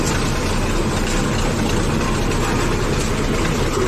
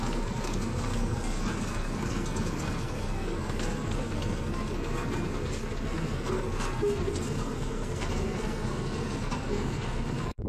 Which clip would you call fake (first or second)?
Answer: second